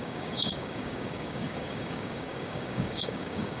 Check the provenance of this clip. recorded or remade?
remade